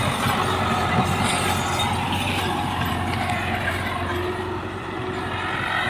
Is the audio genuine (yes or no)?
yes